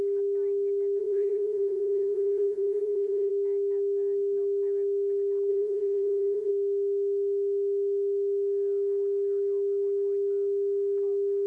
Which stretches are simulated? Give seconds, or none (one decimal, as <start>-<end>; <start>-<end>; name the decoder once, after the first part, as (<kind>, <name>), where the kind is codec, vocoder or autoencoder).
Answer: 1.0-3.3 (codec, SNAC); 5.5-6.5

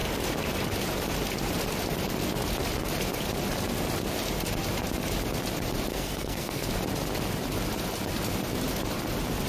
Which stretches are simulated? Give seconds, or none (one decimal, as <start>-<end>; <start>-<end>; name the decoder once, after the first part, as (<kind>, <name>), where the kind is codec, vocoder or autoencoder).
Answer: 5.9-6.7 (codec, SNAC)

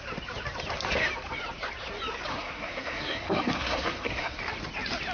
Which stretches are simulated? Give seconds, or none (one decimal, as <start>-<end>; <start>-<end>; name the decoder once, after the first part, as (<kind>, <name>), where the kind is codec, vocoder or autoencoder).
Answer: 2.3-4.4 (codec, SNAC)